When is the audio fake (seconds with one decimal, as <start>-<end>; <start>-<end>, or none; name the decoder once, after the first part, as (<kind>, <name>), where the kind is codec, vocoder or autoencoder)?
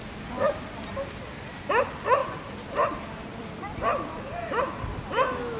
0.9-1.5 (vocoder, BigVGAN v2); 2.2-4.6